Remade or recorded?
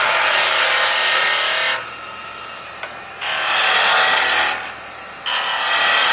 recorded